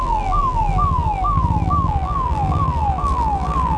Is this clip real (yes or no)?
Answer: no